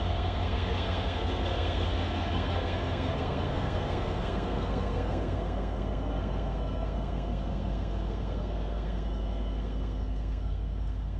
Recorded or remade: remade